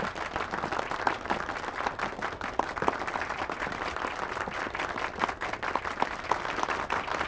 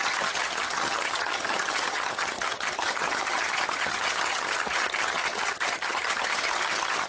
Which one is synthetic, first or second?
second